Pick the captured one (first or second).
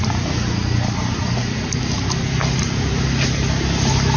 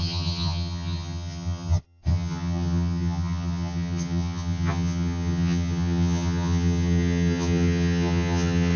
first